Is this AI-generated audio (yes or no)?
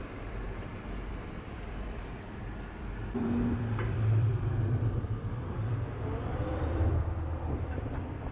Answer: yes